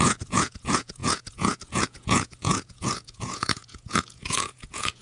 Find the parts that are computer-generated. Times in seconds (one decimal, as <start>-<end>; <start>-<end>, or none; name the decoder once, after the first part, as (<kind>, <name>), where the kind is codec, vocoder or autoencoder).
0.0-5.0 (vocoder, Vocos)